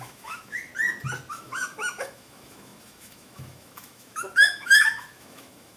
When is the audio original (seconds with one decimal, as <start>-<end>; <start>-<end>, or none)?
0.7-1.3